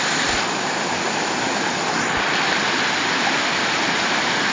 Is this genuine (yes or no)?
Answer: yes